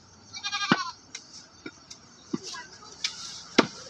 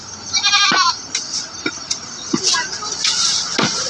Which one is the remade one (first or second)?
first